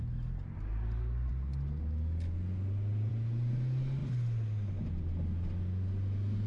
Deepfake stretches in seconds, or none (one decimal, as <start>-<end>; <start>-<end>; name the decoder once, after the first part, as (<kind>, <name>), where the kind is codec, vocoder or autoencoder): none